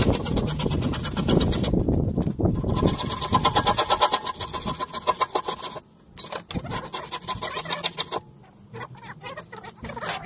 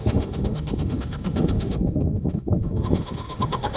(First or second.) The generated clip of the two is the second